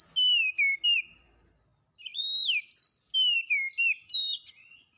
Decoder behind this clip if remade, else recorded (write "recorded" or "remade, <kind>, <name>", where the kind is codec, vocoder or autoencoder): recorded